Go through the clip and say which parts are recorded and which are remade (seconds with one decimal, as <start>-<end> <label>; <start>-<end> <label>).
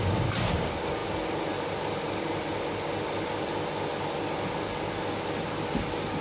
0.0-6.2 recorded